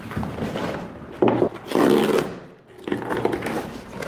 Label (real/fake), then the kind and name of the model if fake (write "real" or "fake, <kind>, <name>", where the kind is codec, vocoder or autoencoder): real